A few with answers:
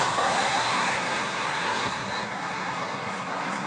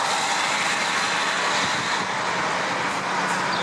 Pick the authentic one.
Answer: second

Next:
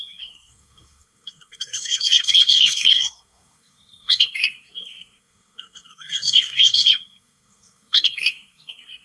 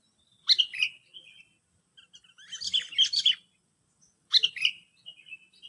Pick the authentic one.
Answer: second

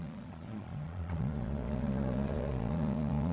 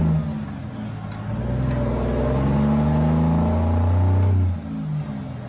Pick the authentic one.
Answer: second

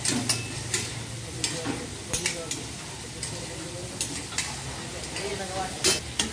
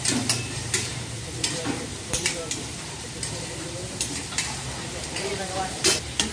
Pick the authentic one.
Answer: first